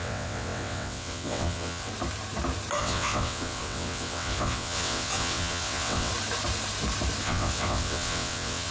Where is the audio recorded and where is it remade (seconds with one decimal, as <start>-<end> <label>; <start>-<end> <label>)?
0.0-1.9 remade; 1.9-2.8 recorded; 2.8-6.1 remade; 6.1-7.2 recorded; 7.2-8.7 remade